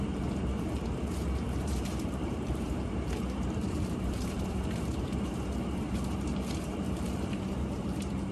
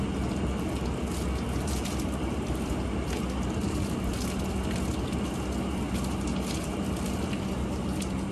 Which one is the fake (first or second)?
first